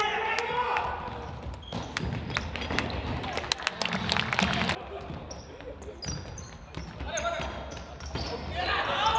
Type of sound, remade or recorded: recorded